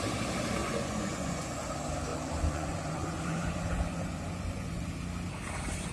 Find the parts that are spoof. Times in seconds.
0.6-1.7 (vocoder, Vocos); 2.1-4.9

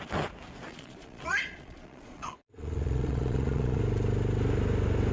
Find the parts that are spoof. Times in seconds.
0.7-3.8 (vocoder, Vocos)

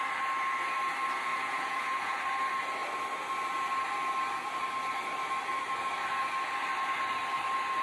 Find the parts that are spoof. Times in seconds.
1.3-2.2 (vocoder, Vocos)